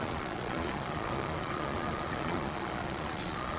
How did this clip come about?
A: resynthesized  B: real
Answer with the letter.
A